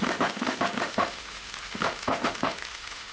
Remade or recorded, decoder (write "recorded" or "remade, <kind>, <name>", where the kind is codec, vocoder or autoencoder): remade, autoencoder, DAC-VAE